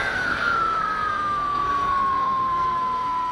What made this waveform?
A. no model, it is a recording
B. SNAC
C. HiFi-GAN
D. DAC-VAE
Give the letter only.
B